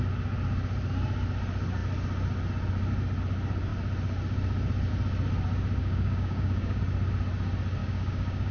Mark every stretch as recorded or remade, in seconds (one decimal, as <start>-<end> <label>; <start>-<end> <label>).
0.0-5.8 recorded; 5.8-6.8 remade; 6.8-7.8 recorded; 7.8-8.5 remade